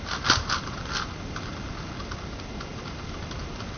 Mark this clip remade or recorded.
recorded